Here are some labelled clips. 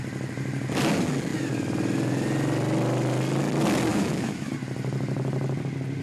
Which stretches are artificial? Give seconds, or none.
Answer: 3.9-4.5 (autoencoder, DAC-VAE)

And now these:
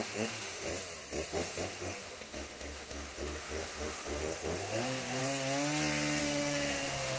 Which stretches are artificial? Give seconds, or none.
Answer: 0.0-0.7 (autoencoder, DAC-VAE); 1.3-5.2; 6.2-7.2

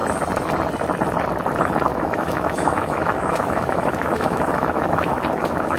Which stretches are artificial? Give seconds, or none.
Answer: 1.9-5.8 (autoencoder, DAC-VAE)